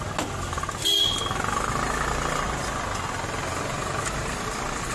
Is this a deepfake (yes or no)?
no